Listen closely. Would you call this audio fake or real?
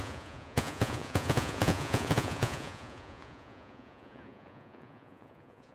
fake